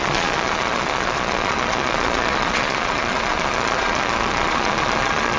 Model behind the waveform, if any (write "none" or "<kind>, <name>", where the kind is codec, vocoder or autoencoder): vocoder, Vocos